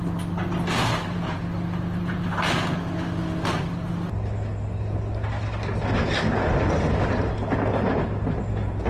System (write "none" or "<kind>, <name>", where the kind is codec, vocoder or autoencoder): none